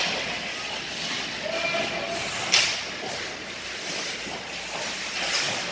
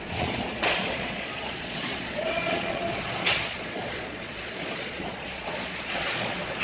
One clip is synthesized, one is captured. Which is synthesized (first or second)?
second